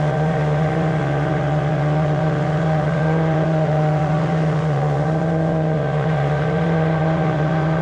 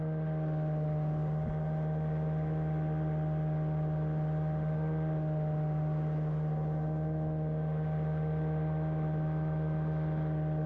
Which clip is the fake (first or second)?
first